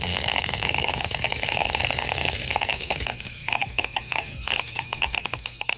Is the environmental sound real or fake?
fake